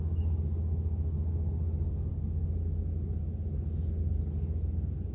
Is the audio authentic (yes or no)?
yes